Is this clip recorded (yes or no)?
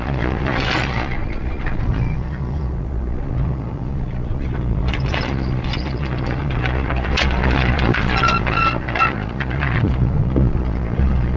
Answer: no